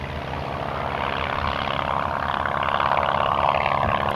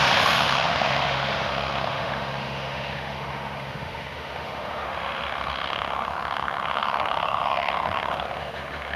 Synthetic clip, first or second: second